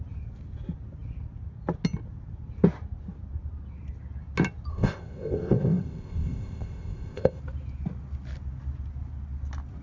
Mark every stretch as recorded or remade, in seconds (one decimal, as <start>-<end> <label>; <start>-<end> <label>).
0.0-4.7 recorded; 4.7-7.4 remade; 7.4-9.8 recorded